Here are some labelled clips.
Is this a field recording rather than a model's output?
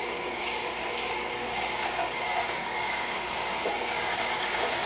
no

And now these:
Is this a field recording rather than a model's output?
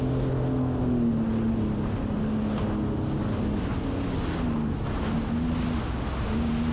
yes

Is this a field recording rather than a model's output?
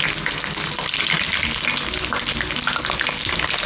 yes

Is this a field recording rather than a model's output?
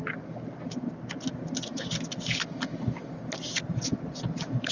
yes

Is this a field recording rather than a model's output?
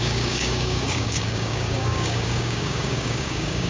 no